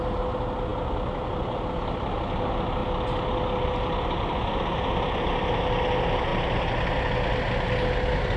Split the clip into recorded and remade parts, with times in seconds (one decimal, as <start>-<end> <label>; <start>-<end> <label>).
0.0-8.4 recorded